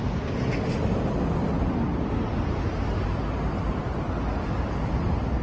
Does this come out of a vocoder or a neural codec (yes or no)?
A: no